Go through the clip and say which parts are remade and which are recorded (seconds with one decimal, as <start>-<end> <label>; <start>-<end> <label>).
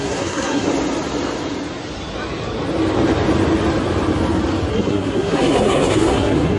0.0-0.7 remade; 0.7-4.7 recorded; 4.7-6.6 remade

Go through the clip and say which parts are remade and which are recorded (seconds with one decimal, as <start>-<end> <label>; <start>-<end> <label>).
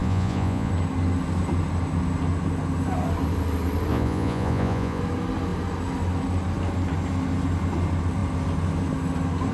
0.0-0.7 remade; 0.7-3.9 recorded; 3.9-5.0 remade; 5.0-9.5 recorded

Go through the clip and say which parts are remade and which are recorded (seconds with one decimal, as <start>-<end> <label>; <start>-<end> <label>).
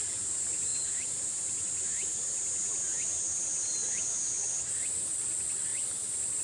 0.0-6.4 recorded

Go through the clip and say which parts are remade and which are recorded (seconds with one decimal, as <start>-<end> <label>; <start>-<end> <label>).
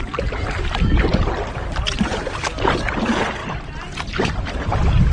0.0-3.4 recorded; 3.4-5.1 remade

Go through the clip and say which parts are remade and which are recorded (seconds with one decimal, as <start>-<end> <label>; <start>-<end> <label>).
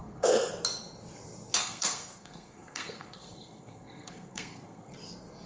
0.0-0.5 remade; 0.5-1.6 recorded; 1.6-4.9 remade; 4.9-5.5 recorded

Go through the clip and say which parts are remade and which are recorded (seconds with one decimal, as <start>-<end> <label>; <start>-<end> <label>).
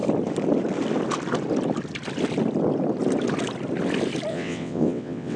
0.0-4.3 recorded; 4.3-5.4 remade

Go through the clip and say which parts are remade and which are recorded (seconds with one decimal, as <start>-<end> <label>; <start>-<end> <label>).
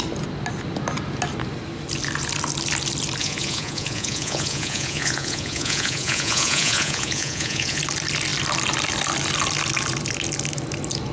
0.0-3.2 recorded; 3.2-7.8 remade; 7.8-11.1 recorded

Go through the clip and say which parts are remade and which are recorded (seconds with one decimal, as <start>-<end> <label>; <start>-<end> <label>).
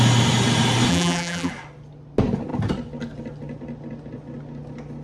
0.0-0.9 recorded; 0.9-1.5 remade; 1.5-5.0 recorded